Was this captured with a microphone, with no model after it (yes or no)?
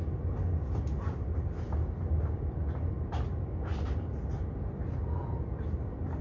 yes